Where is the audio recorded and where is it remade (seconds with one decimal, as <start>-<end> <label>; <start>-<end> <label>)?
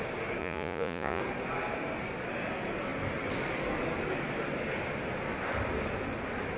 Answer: 0.0-0.4 recorded; 0.4-1.2 remade; 1.2-6.6 recorded